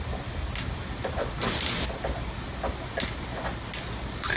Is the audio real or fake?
real